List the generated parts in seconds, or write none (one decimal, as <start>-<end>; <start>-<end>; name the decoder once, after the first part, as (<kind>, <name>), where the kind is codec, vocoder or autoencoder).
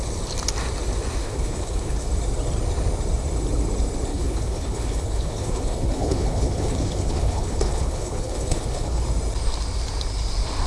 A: 1.2-2.1 (codec, HILCodec); 4.1-9.0